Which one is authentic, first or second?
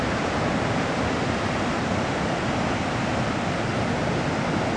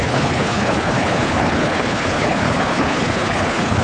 first